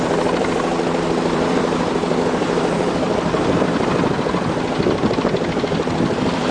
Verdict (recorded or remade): remade